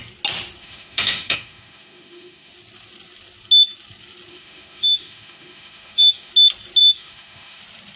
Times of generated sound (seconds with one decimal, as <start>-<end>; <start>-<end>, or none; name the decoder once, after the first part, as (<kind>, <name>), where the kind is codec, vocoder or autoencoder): 0.6-2.5 (autoencoder, DAC-VAE); 4.3-6.3; 6.8-7.6